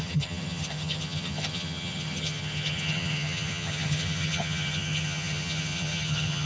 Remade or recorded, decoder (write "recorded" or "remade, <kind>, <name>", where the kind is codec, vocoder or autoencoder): remade, vocoder, HiFi-GAN